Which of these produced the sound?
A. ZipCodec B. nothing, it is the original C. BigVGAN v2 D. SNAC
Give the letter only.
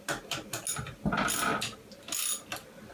B